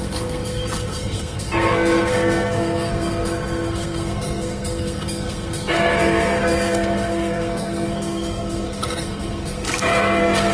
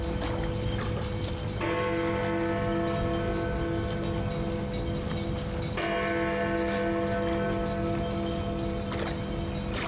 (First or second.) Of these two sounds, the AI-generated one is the first